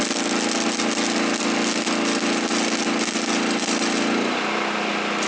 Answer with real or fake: real